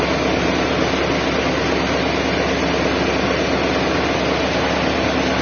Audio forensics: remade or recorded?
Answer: recorded